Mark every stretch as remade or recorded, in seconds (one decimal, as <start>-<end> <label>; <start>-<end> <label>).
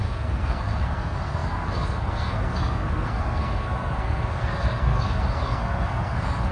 0.0-6.5 remade